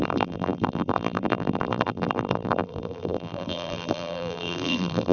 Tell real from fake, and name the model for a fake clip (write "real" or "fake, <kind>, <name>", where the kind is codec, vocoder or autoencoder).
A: fake, vocoder, BigVGAN v2